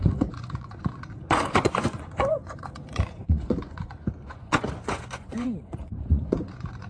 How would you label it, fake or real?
fake